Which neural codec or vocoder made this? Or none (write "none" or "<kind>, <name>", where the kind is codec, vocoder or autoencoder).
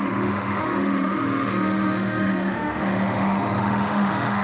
autoencoder, DAC-VAE